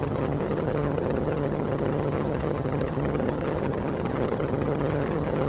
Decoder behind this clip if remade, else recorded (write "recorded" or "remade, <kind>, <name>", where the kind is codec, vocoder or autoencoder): remade, vocoder, HiFi-GAN